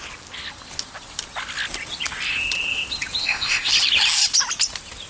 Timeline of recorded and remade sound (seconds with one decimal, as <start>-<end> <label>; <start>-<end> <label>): 0.0-3.2 recorded; 3.2-3.7 remade; 3.7-5.1 recorded